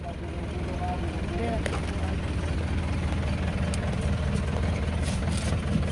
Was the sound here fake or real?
real